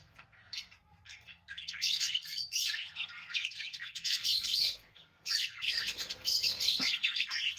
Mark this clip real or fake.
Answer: fake